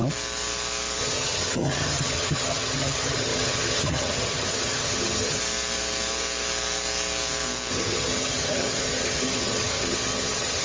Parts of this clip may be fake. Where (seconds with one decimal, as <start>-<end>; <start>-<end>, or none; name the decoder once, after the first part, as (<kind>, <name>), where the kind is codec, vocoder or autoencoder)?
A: 1.0-5.4 (vocoder, HiFi-GAN); 7.7-10.6